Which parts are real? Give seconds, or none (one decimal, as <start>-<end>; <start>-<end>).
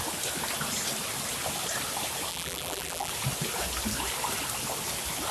0.0-2.3; 3.1-5.3